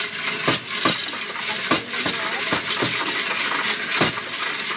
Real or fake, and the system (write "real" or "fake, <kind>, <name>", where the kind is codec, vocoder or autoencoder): real